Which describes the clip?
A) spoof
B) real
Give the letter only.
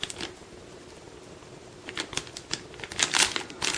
B